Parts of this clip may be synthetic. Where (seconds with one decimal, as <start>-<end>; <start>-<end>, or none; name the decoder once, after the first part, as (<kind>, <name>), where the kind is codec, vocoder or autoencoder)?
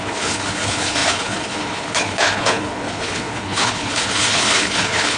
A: 0.0-5.2 (codec, HILCodec)